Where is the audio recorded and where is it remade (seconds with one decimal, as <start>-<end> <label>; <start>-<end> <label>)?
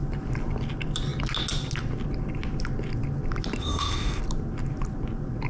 0.0-3.6 recorded; 3.6-4.2 remade; 4.2-5.5 recorded